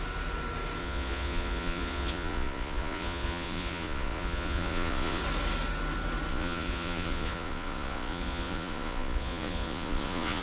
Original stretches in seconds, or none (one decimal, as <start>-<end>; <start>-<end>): 0.0-0.8; 5.2-6.3